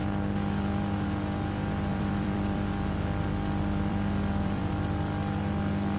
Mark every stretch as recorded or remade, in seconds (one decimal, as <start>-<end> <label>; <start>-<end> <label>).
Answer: 0.0-1.9 recorded; 1.9-4.7 remade; 4.7-6.0 recorded

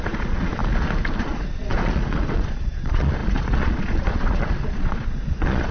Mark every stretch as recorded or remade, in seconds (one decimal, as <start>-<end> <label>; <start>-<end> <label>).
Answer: 0.0-0.6 remade; 0.6-1.2 recorded; 1.2-5.7 remade

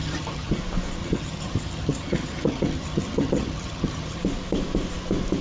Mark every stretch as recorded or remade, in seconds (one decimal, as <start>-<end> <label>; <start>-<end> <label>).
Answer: 0.0-0.6 remade; 0.6-1.0 recorded; 1.0-4.2 remade; 4.2-5.4 recorded

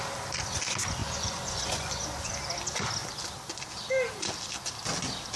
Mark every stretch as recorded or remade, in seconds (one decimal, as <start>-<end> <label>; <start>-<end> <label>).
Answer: 0.0-1.0 recorded; 1.0-2.3 remade; 2.3-5.4 recorded

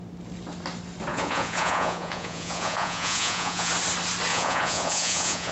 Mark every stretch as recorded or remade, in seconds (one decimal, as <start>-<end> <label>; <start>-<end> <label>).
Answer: 0.0-1.1 recorded; 1.1-3.7 remade; 3.7-4.3 recorded; 4.3-5.5 remade

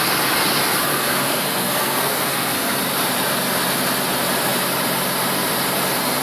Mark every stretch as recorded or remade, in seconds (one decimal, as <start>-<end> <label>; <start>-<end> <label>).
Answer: 0.0-0.9 recorded; 0.9-2.8 remade; 2.8-6.2 recorded